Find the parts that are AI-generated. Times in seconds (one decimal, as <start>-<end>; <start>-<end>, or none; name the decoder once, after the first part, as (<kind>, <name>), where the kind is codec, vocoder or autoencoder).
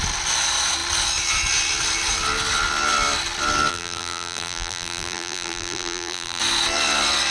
3.7-6.4 (vocoder, BigVGAN v2)